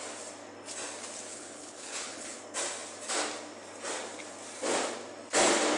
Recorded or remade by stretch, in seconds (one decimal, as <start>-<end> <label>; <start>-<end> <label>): 0.0-1.3 recorded; 1.3-2.4 remade; 2.4-5.8 recorded

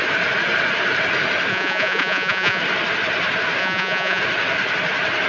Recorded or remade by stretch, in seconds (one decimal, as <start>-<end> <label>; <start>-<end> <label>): 0.0-1.5 recorded; 1.5-2.6 remade; 2.6-3.6 recorded; 3.6-4.2 remade; 4.2-5.3 recorded